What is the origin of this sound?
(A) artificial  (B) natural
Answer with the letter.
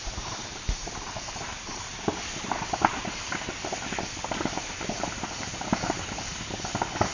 A